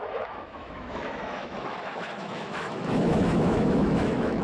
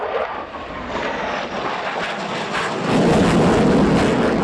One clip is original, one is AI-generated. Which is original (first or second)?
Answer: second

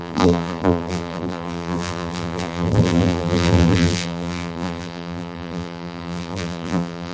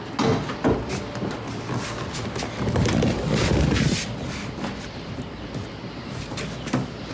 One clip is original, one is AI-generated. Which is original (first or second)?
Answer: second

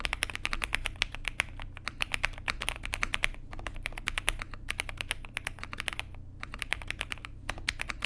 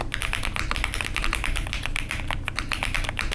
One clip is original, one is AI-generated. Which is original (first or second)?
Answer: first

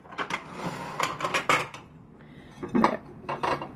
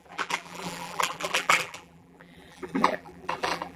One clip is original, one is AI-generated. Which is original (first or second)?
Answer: first